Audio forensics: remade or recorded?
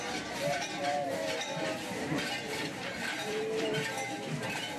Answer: remade